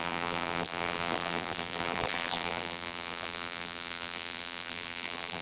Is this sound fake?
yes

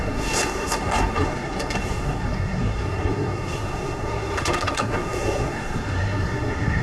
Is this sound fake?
yes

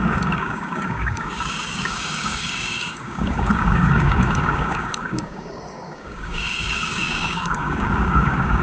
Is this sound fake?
yes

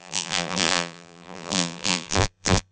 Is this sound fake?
yes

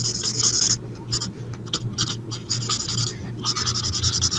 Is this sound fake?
no